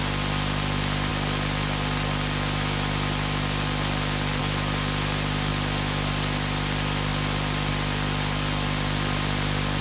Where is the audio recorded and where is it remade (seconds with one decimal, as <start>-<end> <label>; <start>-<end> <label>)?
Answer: 0.0-9.8 recorded